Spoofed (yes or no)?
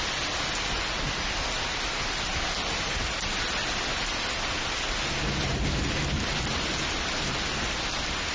no